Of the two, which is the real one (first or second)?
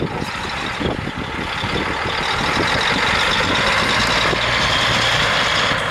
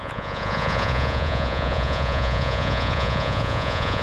first